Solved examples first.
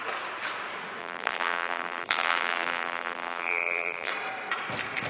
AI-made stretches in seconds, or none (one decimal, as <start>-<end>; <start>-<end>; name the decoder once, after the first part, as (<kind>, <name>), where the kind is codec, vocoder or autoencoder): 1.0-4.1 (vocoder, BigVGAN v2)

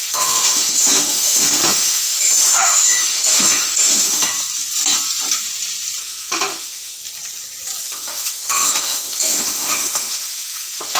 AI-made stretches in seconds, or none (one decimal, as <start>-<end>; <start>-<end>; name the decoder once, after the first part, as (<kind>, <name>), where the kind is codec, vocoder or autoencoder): 0.0-4.3 (autoencoder, DAC-VAE); 6.0-7.0; 7.8-11.0

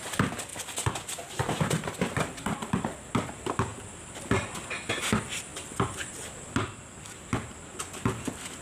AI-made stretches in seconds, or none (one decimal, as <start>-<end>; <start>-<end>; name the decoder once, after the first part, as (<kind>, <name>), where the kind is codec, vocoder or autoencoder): none

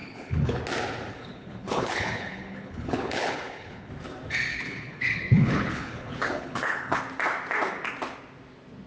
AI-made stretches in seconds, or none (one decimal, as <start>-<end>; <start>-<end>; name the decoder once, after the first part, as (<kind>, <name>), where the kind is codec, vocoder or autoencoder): 0.0-0.6 (codec, HILCodec); 1.1-3.9; 4.5-7.0

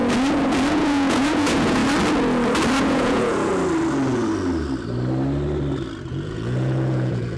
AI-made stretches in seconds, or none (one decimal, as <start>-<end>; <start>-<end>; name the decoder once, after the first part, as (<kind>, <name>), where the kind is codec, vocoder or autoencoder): 0.7-1.8 (vocoder, Vocos); 2.8-3.5; 6.1-7.4